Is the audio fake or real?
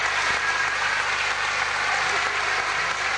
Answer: real